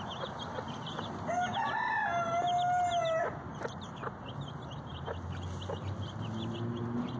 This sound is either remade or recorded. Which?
recorded